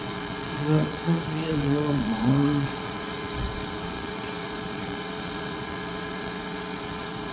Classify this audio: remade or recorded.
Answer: remade